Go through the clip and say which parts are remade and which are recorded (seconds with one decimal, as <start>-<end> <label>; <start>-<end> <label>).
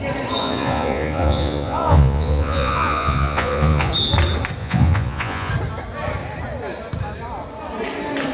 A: 0.0-0.4 recorded; 0.4-3.9 remade; 3.9-4.6 recorded; 4.6-5.5 remade; 5.5-8.3 recorded